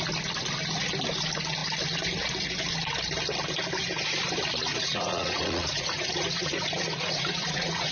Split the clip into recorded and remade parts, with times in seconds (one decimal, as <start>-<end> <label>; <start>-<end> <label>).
0.0-4.7 recorded; 4.7-7.9 remade